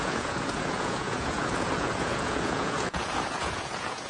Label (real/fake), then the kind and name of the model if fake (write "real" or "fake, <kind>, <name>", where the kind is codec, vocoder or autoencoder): fake, vocoder, Vocos